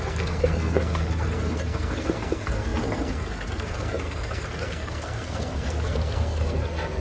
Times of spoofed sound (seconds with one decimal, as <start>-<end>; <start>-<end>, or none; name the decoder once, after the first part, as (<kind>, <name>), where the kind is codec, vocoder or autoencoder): 0.0-7.0 (codec, SNAC)